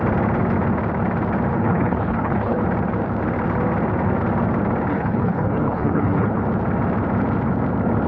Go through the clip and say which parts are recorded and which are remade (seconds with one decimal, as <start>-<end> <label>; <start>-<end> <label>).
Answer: 0.0-1.5 recorded; 1.5-2.6 remade; 2.6-4.9 recorded; 4.9-6.4 remade; 6.4-8.1 recorded